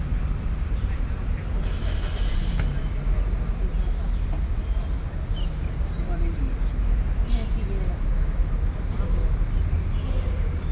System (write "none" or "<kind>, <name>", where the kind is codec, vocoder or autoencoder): none